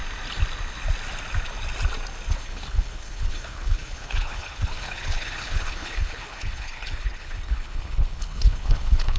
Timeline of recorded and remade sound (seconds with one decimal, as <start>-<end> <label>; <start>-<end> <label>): 0.0-2.3 recorded; 2.3-9.2 remade